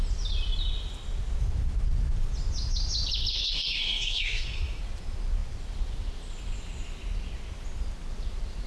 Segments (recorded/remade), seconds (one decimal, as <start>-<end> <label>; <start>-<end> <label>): 0.0-3.3 recorded; 3.3-4.8 remade; 4.8-8.7 recorded